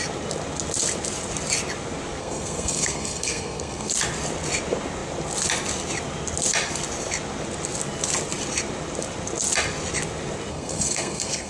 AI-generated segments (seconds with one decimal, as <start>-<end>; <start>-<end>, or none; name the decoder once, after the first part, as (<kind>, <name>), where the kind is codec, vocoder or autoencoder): 2.2-3.9 (codec, SNAC); 10.5-11.5